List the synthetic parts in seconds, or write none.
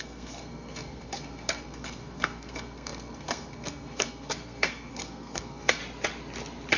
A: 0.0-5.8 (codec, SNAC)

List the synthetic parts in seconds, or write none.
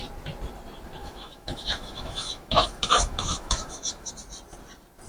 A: 1.0-4.1 (autoencoder, DAC-VAE)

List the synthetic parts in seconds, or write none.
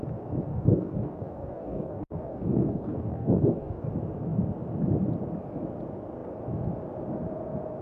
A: 0.5-3.9 (codec, DAC)